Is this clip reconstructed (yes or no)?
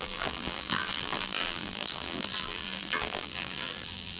yes